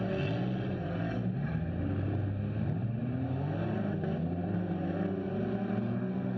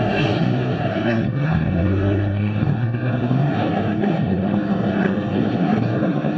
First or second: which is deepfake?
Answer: second